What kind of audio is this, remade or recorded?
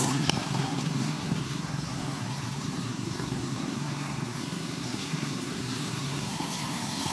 remade